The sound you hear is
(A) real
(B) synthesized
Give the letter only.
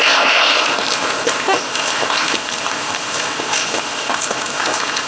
B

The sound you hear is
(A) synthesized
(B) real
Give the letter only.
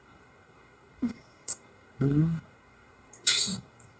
A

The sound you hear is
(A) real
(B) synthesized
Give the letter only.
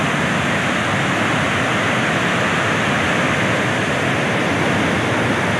A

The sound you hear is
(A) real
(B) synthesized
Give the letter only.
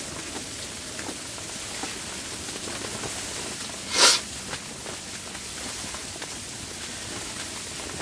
A